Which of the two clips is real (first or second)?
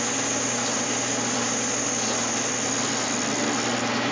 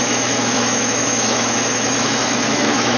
first